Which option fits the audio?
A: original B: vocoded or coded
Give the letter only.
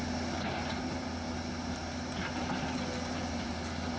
A